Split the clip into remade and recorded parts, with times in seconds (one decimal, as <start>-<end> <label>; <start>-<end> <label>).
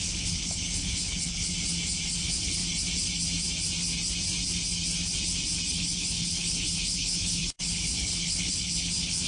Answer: 0.0-1.5 remade; 1.5-2.1 recorded; 2.1-2.6 remade; 2.6-5.7 recorded; 5.7-9.3 remade